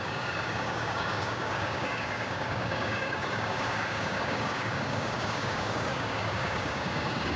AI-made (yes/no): yes